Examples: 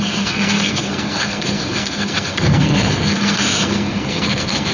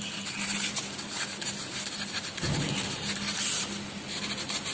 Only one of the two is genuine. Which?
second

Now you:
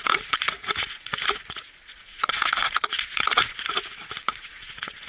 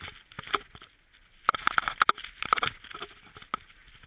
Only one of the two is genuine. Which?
second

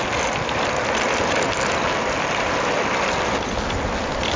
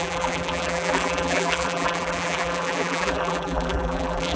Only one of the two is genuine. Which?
first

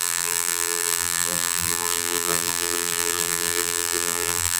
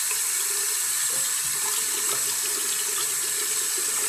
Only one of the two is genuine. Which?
second